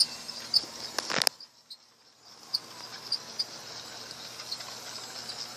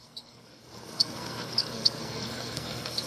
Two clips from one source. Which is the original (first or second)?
first